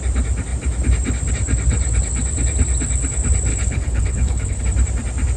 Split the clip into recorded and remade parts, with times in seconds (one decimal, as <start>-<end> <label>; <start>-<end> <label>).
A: 0.0-3.5 recorded; 3.5-4.6 remade; 4.6-5.4 recorded